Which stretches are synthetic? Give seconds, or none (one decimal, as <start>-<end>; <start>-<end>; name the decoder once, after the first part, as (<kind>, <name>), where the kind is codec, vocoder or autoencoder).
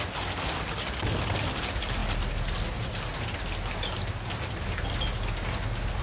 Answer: none